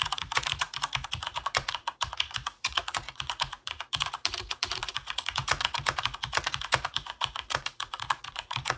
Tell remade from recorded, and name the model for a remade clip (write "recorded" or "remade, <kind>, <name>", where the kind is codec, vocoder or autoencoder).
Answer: remade, vocoder, Vocos